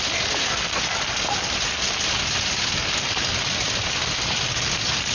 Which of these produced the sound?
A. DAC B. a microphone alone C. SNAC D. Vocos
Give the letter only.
B